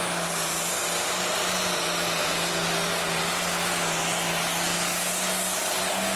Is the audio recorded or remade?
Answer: recorded